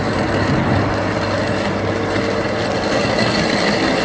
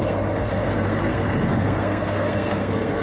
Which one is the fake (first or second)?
second